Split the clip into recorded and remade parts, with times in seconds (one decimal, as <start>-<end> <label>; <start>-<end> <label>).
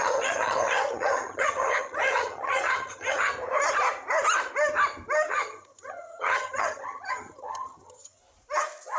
0.0-3.3 remade; 3.3-5.3 recorded; 5.3-8.2 remade; 8.2-9.0 recorded